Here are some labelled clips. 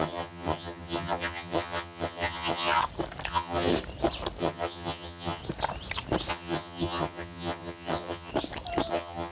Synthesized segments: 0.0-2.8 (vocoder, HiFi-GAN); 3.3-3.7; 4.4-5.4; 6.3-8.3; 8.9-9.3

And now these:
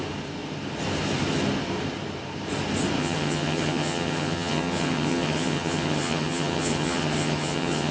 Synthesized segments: 3.0-7.9 (vocoder, HiFi-GAN)

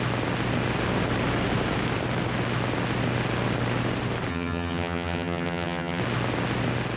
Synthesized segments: 4.3-6.0 (vocoder, HiFi-GAN)

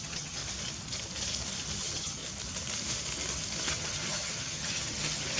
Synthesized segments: 0.0-0.4 (vocoder, HiFi-GAN); 1.8-2.2; 3.7-5.4

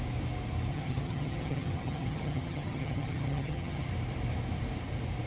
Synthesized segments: 0.7-3.9 (vocoder, HiFi-GAN)